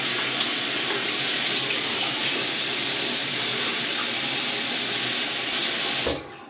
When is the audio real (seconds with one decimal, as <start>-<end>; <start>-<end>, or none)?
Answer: 0.0-3.3; 4.2-6.5